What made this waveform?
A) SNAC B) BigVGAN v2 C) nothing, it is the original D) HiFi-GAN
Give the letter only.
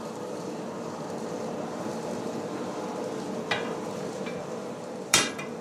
B